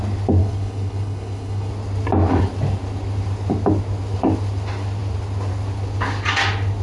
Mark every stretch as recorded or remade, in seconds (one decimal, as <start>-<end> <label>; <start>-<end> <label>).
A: 0.0-0.4 recorded; 0.4-1.7 remade; 1.7-6.8 recorded